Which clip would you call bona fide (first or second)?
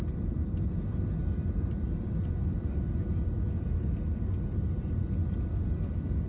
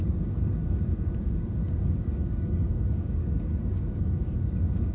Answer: first